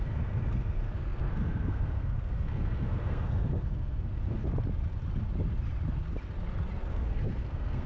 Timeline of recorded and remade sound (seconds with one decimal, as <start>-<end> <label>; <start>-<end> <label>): 0.0-4.4 remade; 4.4-6.9 recorded; 6.9-7.9 remade